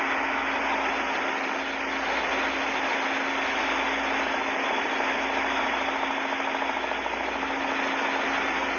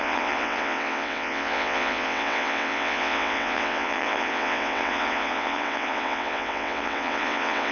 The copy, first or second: second